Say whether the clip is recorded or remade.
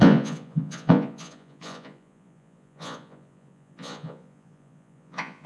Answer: remade